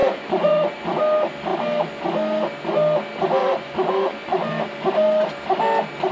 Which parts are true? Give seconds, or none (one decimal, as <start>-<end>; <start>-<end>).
1.0-3.4; 4.5-6.1